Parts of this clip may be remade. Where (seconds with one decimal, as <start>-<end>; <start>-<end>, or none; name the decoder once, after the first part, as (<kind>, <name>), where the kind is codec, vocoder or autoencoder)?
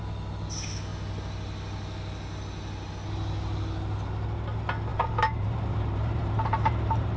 4.9-7.2 (vocoder, BigVGAN v2)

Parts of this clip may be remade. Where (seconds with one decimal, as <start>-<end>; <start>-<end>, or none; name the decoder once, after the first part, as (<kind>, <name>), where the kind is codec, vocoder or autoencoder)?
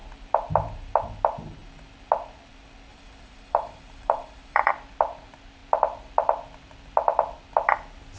2.9-4.7 (vocoder, BigVGAN v2)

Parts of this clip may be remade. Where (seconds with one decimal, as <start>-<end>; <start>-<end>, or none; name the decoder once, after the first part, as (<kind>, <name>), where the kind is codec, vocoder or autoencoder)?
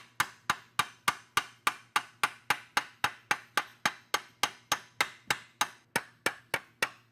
none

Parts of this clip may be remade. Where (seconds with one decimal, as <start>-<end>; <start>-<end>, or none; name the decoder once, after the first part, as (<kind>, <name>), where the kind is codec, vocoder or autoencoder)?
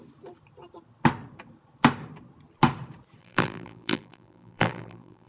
3.2-5.3 (vocoder, BigVGAN v2)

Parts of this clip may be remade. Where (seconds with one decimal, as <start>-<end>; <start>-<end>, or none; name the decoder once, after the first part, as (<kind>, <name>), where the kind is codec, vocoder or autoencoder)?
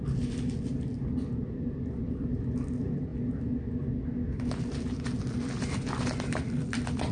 0.0-3.1 (vocoder, BigVGAN v2); 6.2-7.1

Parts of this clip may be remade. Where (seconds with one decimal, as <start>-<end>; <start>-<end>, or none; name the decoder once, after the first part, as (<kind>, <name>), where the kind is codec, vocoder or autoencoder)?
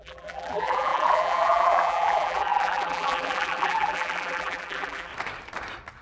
0.0-5.1 (vocoder, BigVGAN v2)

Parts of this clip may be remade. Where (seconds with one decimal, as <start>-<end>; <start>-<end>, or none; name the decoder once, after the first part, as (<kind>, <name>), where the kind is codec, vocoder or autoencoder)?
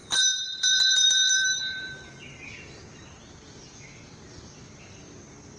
0.0-2.0 (vocoder, BigVGAN v2)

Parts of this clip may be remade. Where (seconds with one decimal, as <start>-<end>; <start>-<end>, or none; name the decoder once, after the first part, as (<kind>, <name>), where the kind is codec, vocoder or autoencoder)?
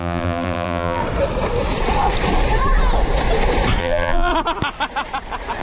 0.0-1.0 (vocoder, BigVGAN v2); 3.8-4.3